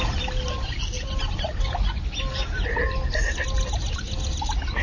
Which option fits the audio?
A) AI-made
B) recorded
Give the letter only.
B